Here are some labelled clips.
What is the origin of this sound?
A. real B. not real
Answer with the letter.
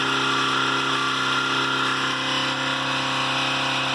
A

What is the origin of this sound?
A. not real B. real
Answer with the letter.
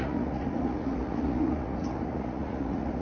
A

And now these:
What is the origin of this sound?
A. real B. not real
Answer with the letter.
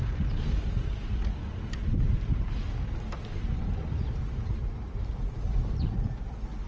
A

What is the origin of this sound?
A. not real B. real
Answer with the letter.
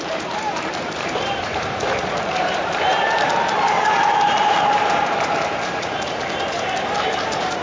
A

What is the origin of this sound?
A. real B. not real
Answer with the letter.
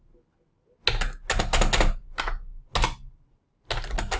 A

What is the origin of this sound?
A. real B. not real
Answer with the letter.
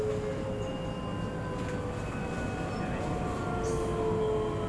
A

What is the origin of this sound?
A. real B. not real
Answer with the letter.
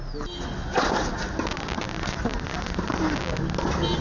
A